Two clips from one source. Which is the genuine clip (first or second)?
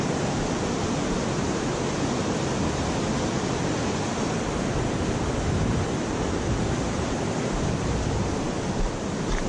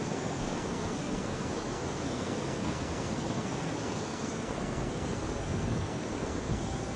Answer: first